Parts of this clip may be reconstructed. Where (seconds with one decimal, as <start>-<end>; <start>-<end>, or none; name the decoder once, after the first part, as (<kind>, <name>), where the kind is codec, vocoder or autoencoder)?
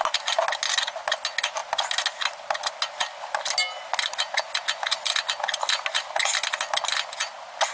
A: none